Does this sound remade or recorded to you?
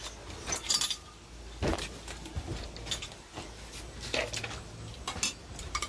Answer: recorded